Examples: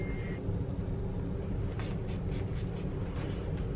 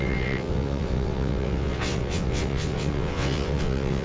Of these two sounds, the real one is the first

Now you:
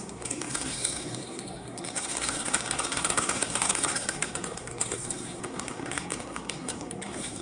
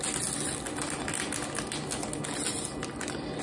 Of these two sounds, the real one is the second